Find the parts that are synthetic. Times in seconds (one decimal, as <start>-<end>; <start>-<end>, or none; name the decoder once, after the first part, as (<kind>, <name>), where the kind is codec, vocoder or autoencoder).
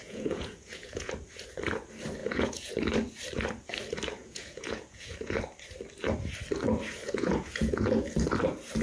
0.0-1.1 (vocoder, Vocos); 2.2-2.7; 4.2-5.4; 7.0-8.2